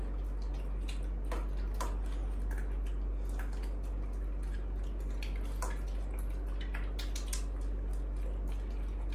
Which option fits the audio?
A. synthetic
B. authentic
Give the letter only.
B